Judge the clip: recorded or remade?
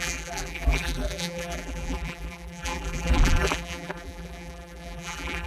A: remade